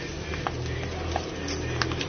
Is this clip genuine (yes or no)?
yes